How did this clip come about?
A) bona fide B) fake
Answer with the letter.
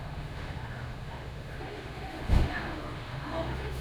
B